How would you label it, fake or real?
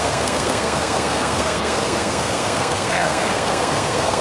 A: fake